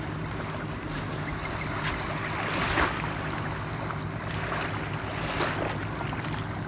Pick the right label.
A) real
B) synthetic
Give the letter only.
A